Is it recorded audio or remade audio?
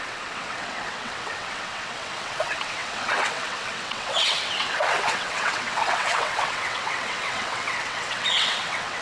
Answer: remade